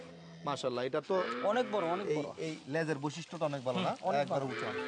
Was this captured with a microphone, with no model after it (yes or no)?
yes